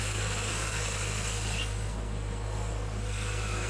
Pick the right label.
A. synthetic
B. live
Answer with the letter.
A